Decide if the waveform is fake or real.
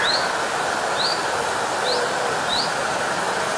real